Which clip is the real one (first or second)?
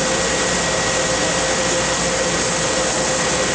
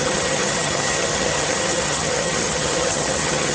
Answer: first